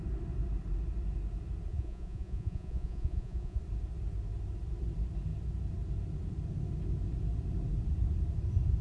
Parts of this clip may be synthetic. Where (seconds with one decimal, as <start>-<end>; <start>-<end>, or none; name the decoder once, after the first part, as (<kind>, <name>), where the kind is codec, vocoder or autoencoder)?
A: 1.7-3.6 (vocoder, Vocos)